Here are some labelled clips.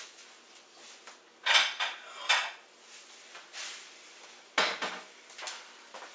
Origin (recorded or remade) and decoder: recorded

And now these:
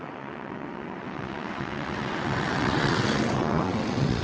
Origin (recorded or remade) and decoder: remade, vocoder, WaveNeXt